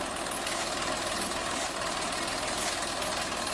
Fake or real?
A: real